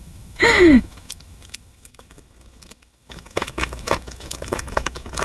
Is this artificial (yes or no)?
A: yes